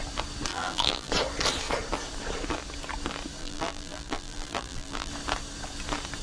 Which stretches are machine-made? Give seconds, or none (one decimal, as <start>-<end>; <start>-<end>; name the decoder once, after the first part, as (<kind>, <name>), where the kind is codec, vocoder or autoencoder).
0.5-1.1 (vocoder, BigVGAN v2); 3.4-5.1